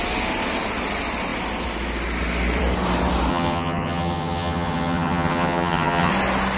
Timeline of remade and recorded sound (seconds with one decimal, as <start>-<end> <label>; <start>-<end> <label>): 0.0-3.3 recorded; 3.3-6.1 remade; 6.1-6.6 recorded